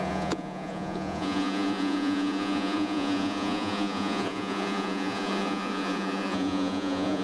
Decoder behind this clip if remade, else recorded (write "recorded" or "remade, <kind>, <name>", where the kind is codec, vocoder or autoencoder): remade, vocoder, Vocos